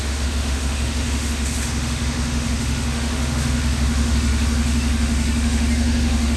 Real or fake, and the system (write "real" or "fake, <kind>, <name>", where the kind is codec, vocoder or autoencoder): fake, autoencoder, DAC-VAE